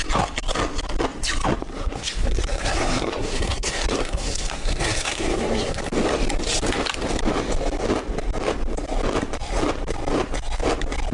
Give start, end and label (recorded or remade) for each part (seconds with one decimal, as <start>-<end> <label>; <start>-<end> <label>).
0.0-1.7 recorded; 1.7-5.8 remade; 5.8-11.1 recorded